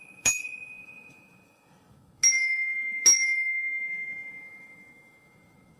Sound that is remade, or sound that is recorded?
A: remade